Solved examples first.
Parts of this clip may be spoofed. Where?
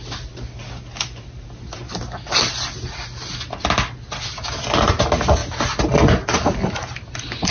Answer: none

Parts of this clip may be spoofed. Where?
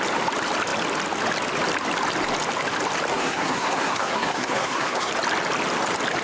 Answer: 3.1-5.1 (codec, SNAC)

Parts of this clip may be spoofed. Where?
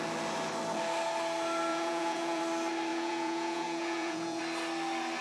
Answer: 1.7-2.4 (vocoder, Vocos); 2.9-4.4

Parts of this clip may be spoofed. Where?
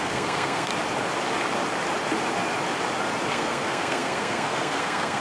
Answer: 0.0-0.7 (codec, SNAC); 3.3-5.2